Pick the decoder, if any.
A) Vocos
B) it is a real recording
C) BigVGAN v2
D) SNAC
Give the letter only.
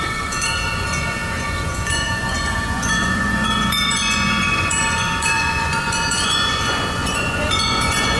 A